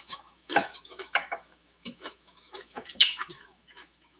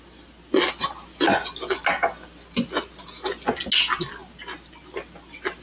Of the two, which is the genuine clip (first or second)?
second